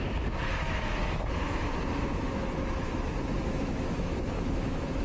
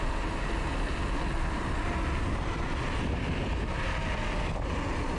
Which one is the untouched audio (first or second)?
second